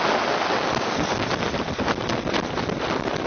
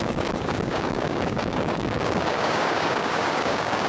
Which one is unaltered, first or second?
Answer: first